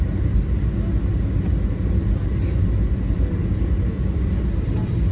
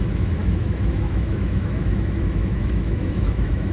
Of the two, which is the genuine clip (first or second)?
first